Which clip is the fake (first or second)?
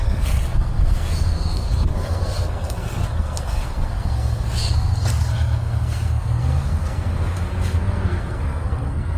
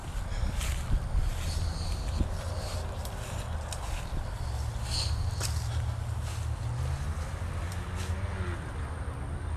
first